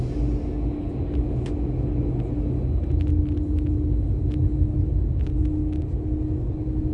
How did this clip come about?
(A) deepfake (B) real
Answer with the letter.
B